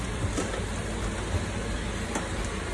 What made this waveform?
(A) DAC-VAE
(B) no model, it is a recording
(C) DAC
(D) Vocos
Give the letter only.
B